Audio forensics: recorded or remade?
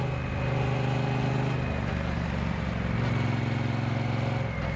recorded